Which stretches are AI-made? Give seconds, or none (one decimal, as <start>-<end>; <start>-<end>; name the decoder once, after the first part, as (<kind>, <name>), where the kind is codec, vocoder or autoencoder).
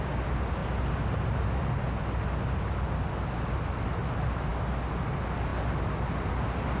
none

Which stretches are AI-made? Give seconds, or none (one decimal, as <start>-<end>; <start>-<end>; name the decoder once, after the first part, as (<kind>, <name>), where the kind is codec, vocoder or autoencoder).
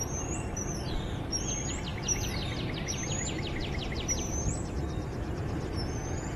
none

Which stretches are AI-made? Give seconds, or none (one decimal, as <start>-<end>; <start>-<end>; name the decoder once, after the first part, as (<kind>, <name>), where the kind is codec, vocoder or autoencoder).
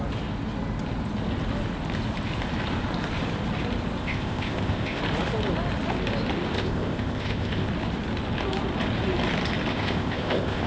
4.0-5.0 (codec, ZipCodec); 6.5-7.7; 9.7-10.7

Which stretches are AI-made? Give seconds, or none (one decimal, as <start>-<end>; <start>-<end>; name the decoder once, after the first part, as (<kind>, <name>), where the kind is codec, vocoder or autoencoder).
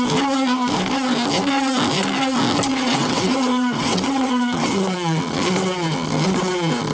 2.7-5.2 (vocoder, WaveNeXt)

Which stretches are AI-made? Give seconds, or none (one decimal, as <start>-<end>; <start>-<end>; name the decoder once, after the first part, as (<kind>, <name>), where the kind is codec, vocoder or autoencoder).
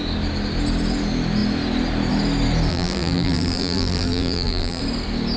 2.7-4.8 (vocoder, BigVGAN v2)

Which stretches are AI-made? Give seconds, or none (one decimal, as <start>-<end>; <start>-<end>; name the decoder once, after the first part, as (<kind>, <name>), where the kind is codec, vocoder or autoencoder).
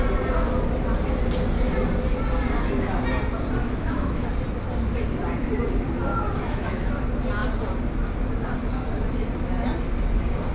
3.6-4.3 (autoencoder, DAC-VAE); 6.1-6.9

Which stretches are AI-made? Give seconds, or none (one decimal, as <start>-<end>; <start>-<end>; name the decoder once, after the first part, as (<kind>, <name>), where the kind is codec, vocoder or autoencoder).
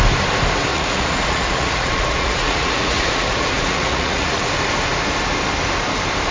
0.7-4.5 (vocoder, Vocos)